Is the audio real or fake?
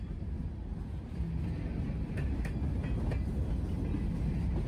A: real